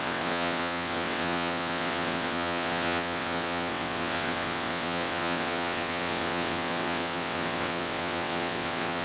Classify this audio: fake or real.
fake